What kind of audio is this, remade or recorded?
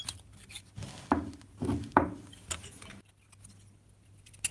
recorded